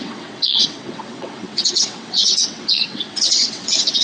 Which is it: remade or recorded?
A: remade